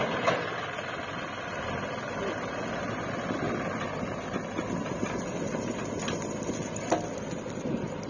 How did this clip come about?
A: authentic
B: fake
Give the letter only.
B